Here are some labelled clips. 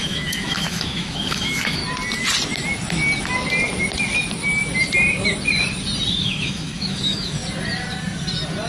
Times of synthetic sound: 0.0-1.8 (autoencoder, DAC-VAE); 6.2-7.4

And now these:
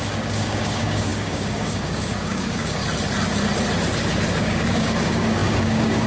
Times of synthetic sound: 0.0-2.8 (codec, DAC); 4.4-6.1

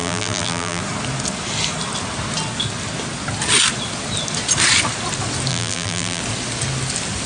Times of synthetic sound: 0.0-0.8 (vocoder, BigVGAN v2); 5.5-6.2

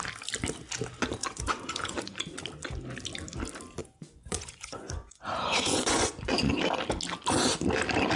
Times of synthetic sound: 1.2-2.2 (vocoder, Vocos); 3.8-6.5

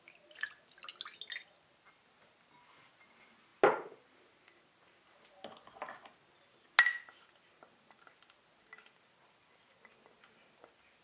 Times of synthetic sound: none

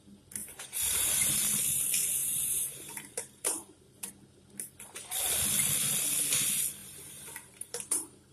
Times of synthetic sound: 0.4-1.5 (vocoder, BigVGAN v2); 2.2-4.1; 6.8-8.3